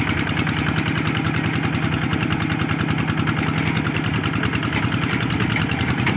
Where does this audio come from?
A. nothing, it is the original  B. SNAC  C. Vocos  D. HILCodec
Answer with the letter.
A